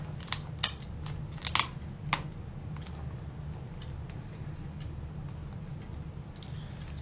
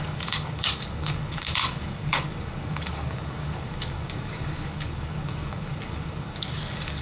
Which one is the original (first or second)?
first